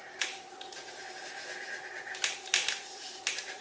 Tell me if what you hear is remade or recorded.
recorded